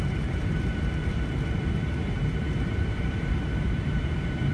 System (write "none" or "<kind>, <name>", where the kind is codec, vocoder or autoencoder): vocoder, BigVGAN v2